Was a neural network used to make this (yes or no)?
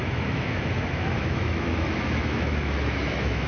yes